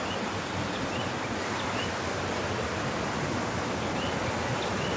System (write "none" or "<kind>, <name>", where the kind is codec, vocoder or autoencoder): none